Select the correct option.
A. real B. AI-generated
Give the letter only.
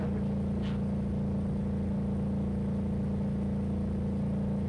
A